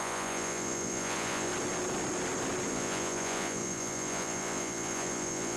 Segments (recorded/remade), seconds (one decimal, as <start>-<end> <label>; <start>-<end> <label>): 0.0-1.5 remade; 1.5-2.7 recorded; 2.7-5.6 remade